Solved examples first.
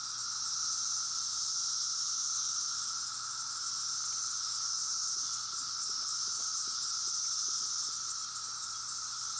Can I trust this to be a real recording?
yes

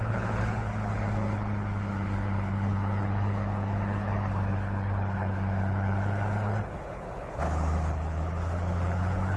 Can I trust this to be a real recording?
no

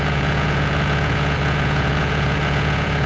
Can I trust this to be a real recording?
no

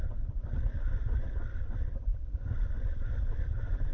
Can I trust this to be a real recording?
no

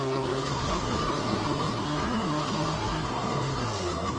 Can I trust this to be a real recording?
no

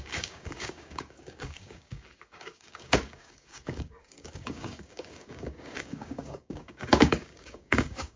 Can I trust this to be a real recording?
no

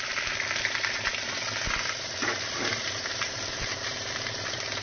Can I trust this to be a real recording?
yes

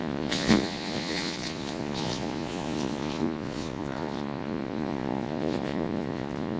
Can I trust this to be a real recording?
no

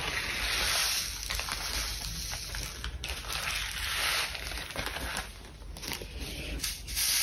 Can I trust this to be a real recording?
yes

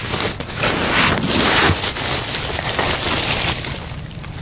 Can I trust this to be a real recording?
yes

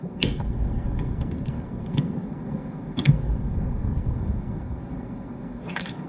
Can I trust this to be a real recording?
no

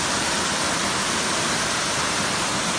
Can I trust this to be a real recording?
no